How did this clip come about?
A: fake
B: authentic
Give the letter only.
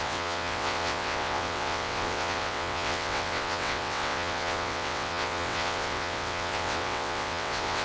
A